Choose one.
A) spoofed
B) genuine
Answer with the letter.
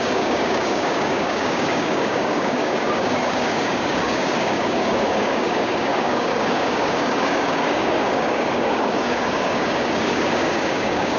A